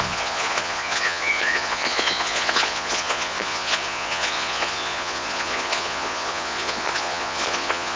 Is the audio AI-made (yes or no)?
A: yes